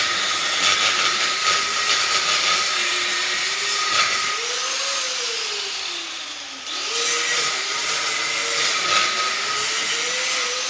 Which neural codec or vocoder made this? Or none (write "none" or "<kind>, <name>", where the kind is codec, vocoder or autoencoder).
none